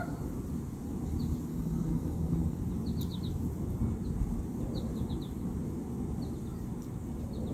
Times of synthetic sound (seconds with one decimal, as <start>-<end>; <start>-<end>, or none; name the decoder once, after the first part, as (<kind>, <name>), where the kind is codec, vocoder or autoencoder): 1.5-2.6 (codec, SNAC)